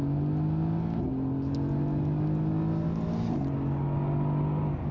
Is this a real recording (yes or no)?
yes